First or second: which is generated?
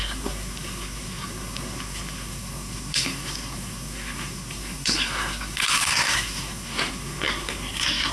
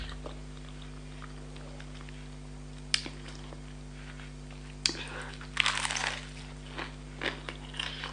first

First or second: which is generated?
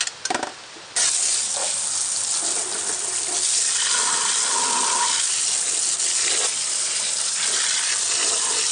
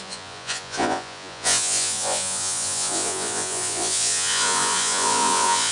second